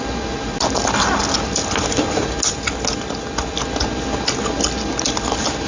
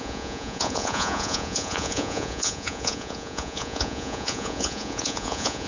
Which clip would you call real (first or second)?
first